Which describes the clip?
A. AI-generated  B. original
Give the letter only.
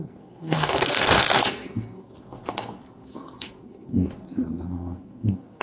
A